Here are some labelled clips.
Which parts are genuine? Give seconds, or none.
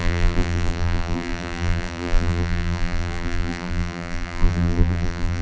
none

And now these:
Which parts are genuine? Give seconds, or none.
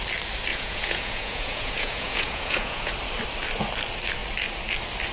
0.0-0.5; 2.9-5.1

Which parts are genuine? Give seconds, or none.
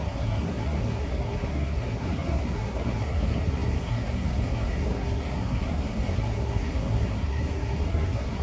none